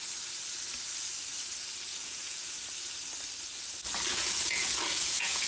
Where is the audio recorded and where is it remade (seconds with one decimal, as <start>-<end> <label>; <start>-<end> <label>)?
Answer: 0.0-1.9 recorded; 1.9-2.5 remade; 2.5-4.1 recorded; 4.1-5.5 remade